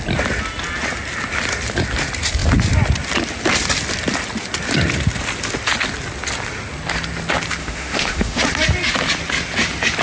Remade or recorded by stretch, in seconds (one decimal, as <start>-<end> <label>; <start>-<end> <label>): 0.0-7.6 recorded; 7.6-8.4 remade; 8.4-10.0 recorded